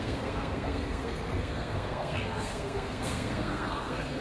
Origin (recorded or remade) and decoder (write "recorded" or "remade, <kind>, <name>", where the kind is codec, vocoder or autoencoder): remade, codec, SNAC